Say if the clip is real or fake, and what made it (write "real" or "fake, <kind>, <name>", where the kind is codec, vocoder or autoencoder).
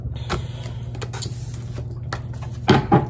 real